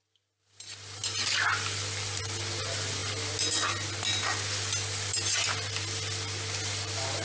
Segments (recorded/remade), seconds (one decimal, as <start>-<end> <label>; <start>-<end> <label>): 0.0-7.2 recorded